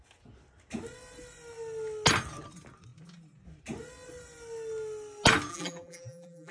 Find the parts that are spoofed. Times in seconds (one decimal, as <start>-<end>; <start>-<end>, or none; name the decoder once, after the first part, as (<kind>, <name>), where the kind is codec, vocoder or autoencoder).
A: 5.5-6.5 (vocoder, BigVGAN v2)